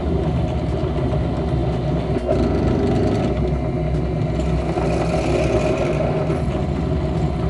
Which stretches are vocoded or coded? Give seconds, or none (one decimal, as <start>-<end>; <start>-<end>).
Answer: none